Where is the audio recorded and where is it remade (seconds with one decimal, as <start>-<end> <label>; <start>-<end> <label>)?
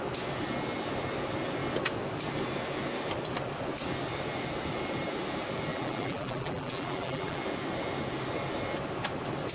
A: 0.0-5.7 recorded; 5.7-7.4 remade; 7.4-9.5 recorded